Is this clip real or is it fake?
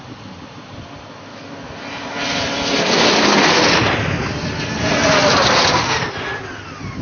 real